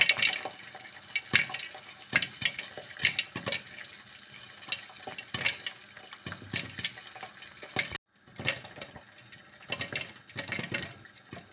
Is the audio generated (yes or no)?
no